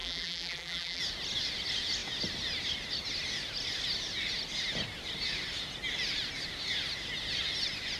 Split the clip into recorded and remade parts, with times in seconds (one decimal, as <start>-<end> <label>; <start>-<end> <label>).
0.0-1.0 remade; 1.0-8.0 recorded